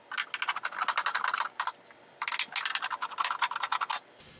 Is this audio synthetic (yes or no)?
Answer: no